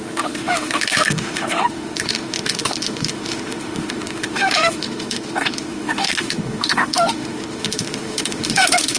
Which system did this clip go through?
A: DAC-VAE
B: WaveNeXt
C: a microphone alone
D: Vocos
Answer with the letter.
A